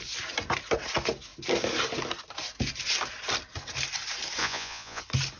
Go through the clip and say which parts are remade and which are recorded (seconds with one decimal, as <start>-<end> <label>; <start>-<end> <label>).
0.0-4.4 recorded; 4.4-5.0 remade; 5.0-5.4 recorded